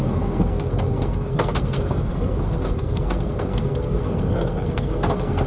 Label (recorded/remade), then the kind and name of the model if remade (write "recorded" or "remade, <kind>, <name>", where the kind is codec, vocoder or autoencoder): remade, codec, SNAC